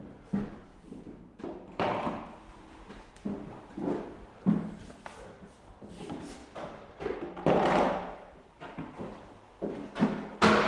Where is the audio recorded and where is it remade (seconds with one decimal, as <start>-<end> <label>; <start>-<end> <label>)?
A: 0.0-10.7 recorded